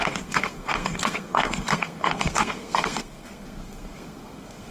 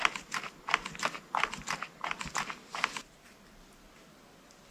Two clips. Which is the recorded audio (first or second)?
second